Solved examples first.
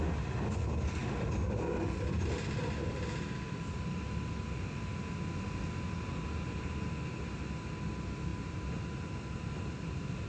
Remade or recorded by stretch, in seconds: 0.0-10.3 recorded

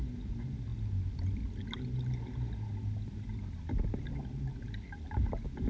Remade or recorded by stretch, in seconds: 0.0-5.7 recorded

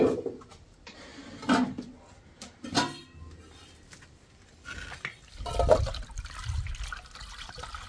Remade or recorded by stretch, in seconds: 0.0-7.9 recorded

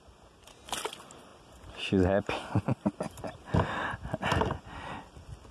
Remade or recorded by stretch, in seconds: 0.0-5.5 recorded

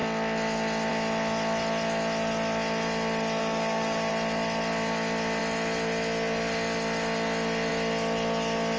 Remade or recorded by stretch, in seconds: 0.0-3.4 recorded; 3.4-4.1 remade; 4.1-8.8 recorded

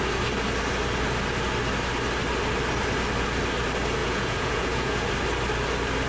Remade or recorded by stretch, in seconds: 0.0-4.0 recorded; 4.0-5.1 remade; 5.1-6.1 recorded